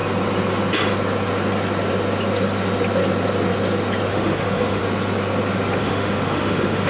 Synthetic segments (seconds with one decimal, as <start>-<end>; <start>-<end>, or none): 4.1-4.8; 5.8-6.9